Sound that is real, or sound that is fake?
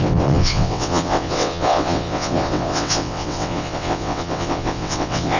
fake